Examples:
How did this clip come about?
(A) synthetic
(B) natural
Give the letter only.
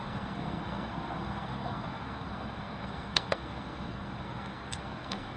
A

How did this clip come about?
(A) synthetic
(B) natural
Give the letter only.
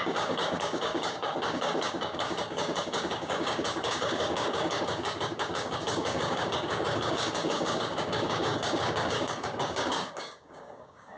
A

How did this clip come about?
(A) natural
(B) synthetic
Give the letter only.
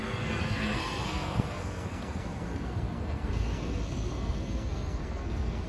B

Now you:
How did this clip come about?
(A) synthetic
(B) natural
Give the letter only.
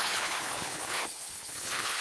A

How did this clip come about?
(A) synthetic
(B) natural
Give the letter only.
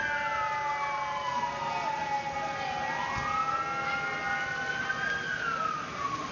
B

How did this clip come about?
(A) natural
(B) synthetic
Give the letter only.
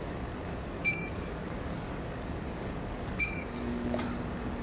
B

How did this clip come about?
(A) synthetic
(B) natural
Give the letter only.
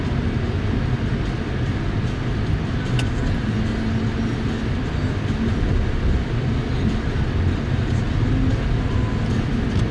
B